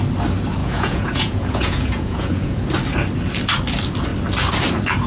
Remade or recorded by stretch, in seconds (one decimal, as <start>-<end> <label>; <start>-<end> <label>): 0.0-0.6 recorded; 0.6-2.6 remade; 2.6-5.1 recorded